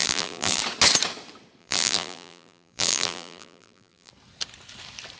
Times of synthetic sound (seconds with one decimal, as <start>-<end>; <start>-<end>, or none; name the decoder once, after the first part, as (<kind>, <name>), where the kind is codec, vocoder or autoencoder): 0.0-0.6 (vocoder, BigVGAN v2); 1.6-4.1

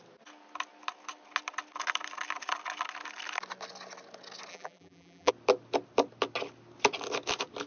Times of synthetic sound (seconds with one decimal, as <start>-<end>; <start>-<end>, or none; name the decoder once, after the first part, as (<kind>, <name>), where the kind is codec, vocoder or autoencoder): 4.5-5.3 (vocoder, BigVGAN v2)

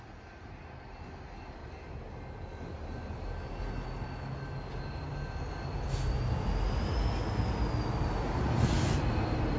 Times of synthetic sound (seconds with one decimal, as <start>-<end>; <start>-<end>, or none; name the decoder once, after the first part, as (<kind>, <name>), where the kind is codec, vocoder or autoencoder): none

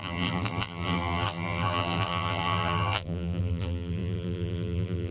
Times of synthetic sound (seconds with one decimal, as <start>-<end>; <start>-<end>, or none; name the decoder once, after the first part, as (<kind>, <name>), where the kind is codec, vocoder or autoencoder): 0.0-5.1 (vocoder, BigVGAN v2)

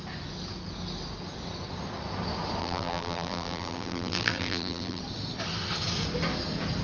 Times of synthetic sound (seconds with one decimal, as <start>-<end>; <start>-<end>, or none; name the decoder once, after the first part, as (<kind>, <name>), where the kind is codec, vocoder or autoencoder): 2.6-5.0 (vocoder, BigVGAN v2)

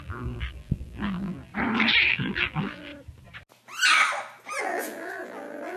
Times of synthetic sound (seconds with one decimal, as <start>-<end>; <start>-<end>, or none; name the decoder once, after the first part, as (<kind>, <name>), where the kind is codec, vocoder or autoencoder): 0.0-1.5 (vocoder, BigVGAN v2); 2.1-2.9; 4.6-5.8

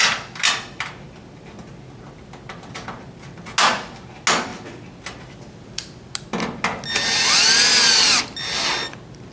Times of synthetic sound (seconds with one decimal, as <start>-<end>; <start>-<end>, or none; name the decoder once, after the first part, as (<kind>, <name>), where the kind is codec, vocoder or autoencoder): none